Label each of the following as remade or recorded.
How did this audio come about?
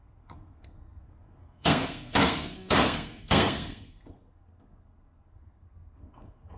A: remade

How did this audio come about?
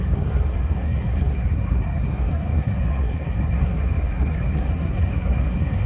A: remade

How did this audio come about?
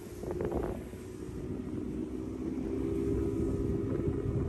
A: recorded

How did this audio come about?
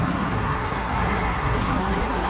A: remade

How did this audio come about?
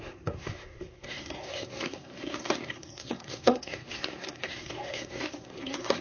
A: remade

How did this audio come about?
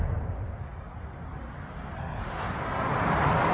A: recorded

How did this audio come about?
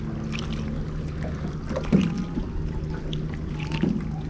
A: recorded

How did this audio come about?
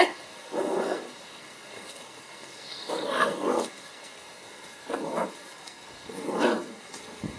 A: remade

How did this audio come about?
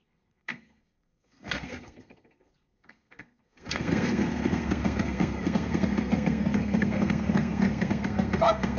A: remade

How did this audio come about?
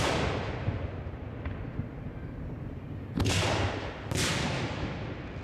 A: recorded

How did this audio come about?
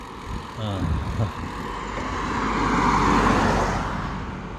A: recorded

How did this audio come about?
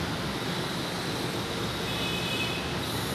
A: recorded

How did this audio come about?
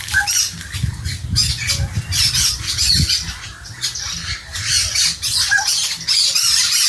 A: recorded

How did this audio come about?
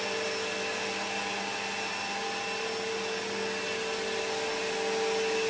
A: recorded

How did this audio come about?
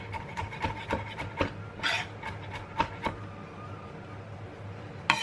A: recorded